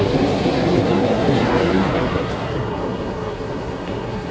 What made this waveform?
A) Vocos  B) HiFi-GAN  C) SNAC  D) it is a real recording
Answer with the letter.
C